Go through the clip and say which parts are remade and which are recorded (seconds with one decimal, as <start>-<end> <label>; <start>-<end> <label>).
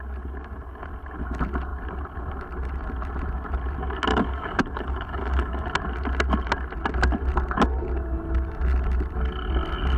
0.0-4.1 recorded; 4.1-5.6 remade; 5.6-10.0 recorded